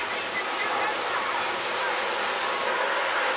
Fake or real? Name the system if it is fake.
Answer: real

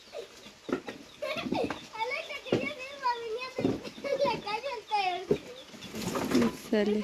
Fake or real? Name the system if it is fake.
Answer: real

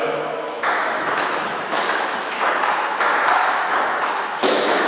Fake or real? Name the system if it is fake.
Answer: fake, autoencoder, DAC-VAE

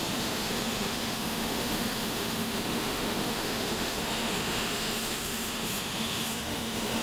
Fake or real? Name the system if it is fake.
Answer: fake, autoencoder, DAC-VAE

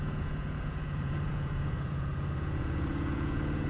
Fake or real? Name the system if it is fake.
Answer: fake, vocoder, Vocos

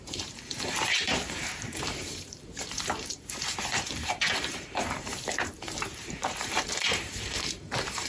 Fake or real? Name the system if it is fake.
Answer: fake, vocoder, BigVGAN v2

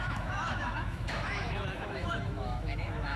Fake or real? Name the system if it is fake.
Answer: fake, autoencoder, DAC-VAE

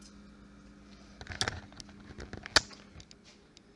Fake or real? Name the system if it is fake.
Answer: real